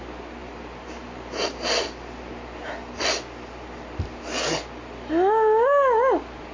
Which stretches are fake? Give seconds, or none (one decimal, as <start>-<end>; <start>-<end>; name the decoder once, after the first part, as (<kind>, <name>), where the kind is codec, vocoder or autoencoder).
0.4-2.3 (vocoder, BigVGAN v2)